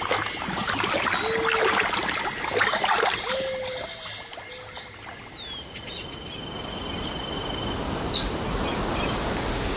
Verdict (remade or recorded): recorded